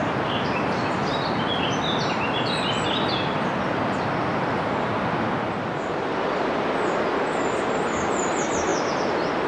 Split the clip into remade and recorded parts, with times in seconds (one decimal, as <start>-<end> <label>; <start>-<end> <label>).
0.0-9.5 recorded